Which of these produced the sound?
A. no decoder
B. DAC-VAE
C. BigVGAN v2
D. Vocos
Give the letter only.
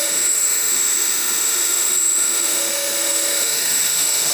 B